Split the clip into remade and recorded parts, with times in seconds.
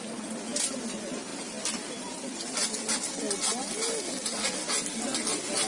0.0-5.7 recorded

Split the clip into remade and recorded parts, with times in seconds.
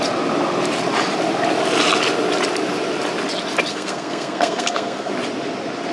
0.0-3.7 recorded; 3.7-5.1 remade; 5.1-5.9 recorded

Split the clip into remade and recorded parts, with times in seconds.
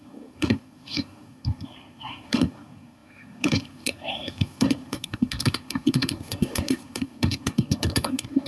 0.0-8.5 remade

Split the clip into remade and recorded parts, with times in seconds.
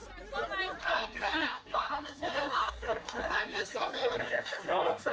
0.0-0.8 recorded; 0.8-5.1 remade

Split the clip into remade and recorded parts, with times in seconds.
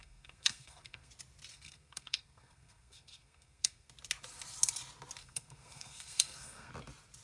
0.0-1.1 remade; 1.1-1.5 recorded; 1.5-3.9 remade; 3.9-5.2 recorded; 5.2-6.7 remade; 6.7-7.2 recorded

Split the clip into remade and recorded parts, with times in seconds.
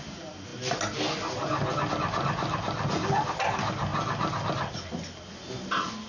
0.0-6.1 recorded